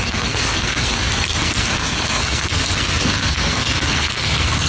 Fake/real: fake